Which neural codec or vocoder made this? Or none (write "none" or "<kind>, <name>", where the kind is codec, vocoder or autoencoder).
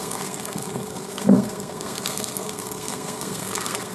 codec, SNAC